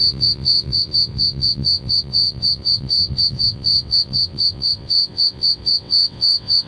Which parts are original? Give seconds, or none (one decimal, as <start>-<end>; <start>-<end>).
none